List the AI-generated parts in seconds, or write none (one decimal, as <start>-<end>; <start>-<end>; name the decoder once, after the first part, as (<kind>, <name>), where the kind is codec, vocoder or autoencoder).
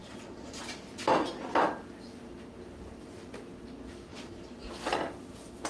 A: 0.0-0.6 (vocoder, Vocos); 4.1-4.7